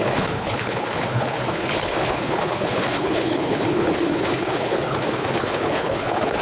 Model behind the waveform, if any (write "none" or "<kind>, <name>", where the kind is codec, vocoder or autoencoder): codec, HILCodec